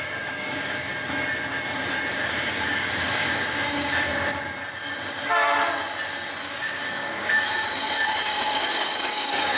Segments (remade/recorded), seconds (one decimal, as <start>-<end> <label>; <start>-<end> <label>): 0.0-0.9 remade; 0.9-2.1 recorded; 2.1-4.1 remade; 4.1-6.4 recorded; 6.4-9.6 remade